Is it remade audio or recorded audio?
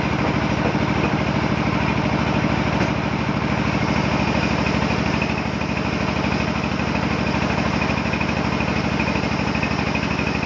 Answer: recorded